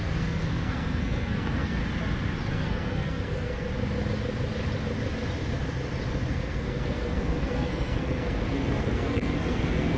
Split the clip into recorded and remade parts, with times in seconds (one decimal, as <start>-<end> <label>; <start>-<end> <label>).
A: 0.0-1.8 remade; 1.8-2.5 recorded; 2.5-3.7 remade; 3.7-6.3 recorded; 6.3-10.0 remade